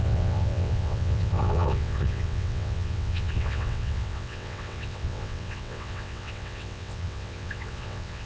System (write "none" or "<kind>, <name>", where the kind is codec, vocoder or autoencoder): vocoder, WaveNeXt